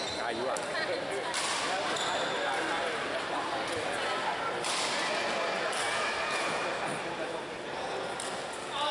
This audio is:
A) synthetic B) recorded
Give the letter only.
B